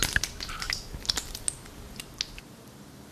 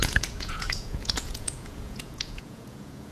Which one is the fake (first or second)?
second